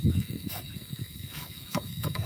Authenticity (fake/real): fake